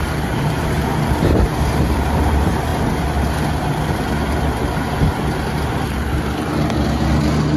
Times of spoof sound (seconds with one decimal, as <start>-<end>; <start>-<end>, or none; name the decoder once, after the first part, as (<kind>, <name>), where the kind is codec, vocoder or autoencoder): 0.0-2.7 (vocoder, BigVGAN v2)